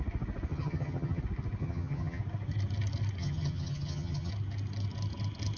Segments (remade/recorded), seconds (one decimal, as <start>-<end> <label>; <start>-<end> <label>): 0.0-0.5 recorded; 0.5-1.2 remade; 1.2-1.6 recorded; 1.6-2.2 remade; 2.2-3.2 recorded; 3.2-4.3 remade; 4.3-5.6 recorded